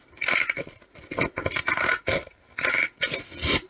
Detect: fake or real real